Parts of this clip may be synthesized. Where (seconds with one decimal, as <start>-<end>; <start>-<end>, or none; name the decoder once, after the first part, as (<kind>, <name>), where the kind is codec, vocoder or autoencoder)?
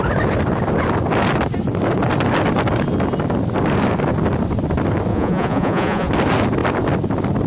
5.1-6.1 (vocoder, Vocos)